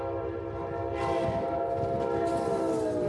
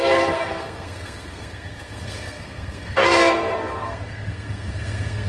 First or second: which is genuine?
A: first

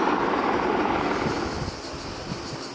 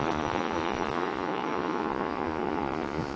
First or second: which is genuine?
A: first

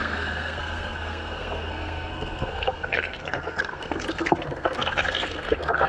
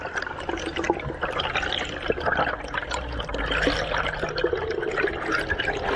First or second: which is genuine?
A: second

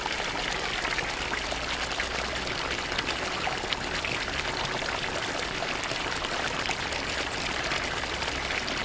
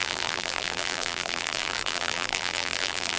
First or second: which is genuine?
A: first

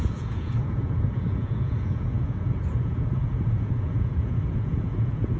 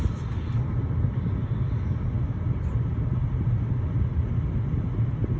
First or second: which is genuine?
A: second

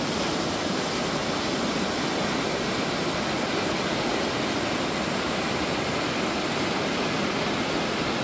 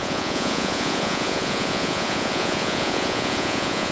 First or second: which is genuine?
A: first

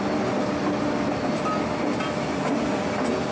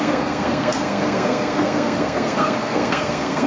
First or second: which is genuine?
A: first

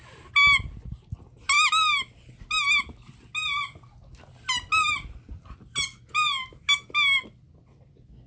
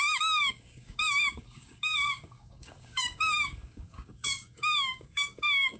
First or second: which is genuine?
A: first